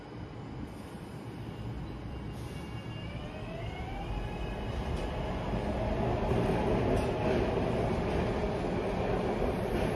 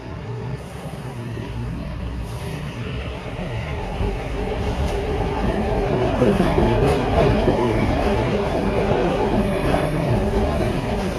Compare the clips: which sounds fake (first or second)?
second